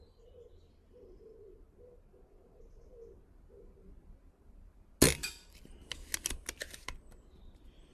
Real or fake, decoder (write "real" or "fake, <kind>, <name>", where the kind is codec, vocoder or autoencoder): real